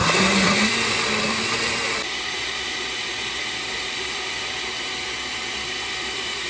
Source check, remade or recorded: remade